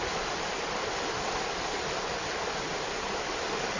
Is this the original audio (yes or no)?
no